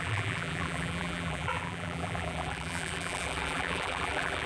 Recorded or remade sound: remade